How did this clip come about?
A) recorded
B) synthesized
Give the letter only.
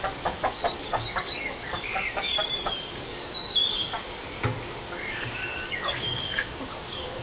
B